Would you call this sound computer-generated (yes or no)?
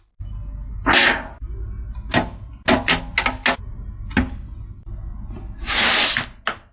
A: no